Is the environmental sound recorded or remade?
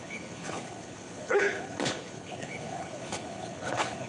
remade